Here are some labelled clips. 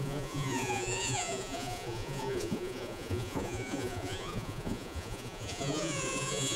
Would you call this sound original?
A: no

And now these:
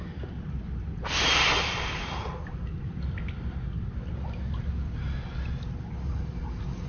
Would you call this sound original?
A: yes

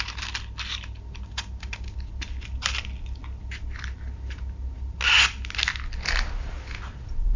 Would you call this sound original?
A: yes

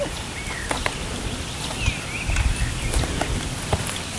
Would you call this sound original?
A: yes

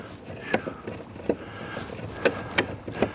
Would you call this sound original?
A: yes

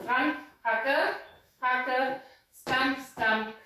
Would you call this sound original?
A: no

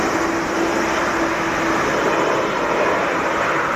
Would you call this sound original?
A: yes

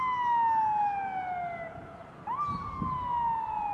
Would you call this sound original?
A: yes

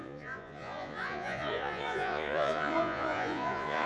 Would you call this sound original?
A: no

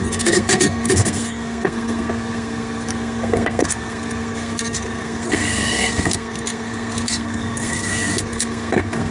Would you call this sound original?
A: no